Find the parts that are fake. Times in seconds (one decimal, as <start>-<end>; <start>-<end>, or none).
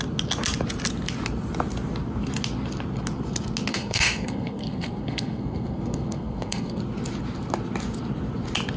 3.7-6.8